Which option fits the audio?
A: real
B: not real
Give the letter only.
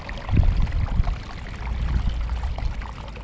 A